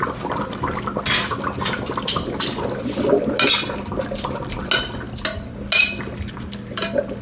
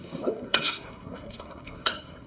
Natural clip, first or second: first